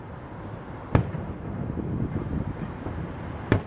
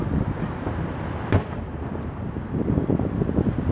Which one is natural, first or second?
second